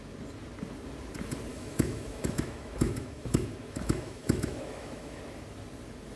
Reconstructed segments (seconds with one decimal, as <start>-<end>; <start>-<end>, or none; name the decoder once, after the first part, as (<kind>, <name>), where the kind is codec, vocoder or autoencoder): 1.5-5.2 (autoencoder, DAC-VAE)